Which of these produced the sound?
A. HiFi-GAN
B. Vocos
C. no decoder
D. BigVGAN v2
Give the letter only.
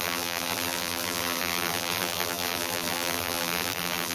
D